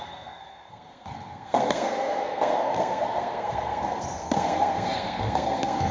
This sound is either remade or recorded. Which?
remade